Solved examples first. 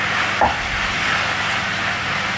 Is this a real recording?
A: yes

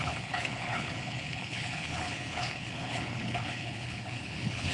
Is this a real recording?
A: no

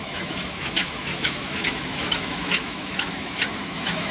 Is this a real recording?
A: no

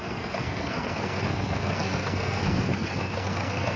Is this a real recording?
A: no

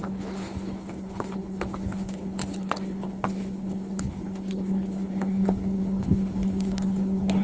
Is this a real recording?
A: no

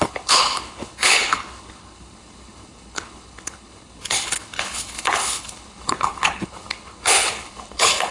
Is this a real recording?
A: no